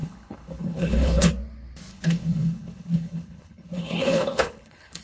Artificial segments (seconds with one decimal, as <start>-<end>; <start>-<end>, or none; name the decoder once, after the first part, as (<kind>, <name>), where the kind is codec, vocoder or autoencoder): 0.0-1.3 (codec, HILCodec); 1.9-5.0

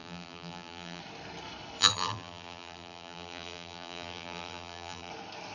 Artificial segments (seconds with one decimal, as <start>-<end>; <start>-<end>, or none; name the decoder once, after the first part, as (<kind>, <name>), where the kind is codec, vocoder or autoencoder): 0.0-1.0 (vocoder, BigVGAN v2); 1.8-5.1

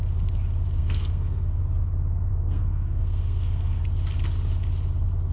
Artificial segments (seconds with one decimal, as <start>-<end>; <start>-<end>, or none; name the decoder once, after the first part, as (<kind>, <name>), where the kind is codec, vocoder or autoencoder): 0.8-1.6 (codec, SNAC); 2.3-3.8

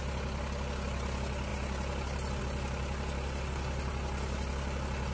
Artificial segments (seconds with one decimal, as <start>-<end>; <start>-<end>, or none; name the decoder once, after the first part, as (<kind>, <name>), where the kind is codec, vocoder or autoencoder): none

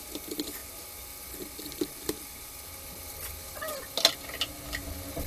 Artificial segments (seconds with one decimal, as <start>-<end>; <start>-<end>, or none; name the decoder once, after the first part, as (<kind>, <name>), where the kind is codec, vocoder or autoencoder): none

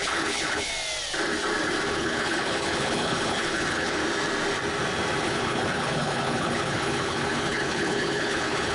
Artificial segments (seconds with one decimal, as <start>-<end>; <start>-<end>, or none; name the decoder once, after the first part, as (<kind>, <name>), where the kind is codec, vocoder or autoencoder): 0.0-0.7 (codec, HILCodec); 1.9-4.0; 5.2-8.7